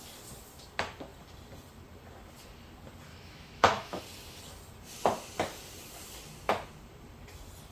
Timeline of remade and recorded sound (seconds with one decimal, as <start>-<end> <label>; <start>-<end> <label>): 0.0-3.1 recorded; 3.1-4.0 remade; 4.0-7.7 recorded